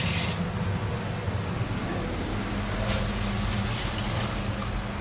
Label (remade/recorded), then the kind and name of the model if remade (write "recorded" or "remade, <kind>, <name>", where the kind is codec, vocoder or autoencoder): recorded